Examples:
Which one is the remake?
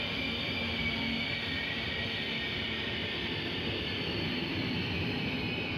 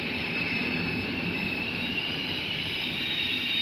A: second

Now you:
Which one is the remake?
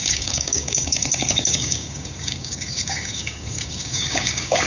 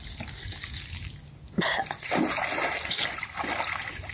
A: first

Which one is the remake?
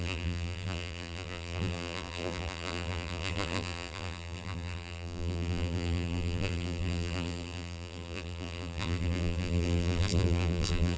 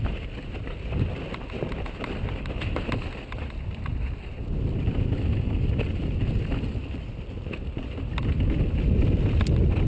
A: first